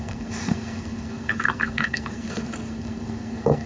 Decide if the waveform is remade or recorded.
remade